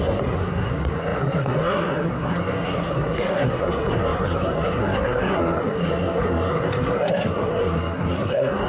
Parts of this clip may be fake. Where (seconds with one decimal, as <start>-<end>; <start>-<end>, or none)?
0.0-8.7